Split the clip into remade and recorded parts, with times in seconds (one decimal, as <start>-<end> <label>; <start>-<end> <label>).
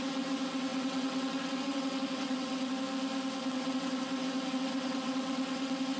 0.0-2.7 remade; 2.7-3.4 recorded; 3.4-6.0 remade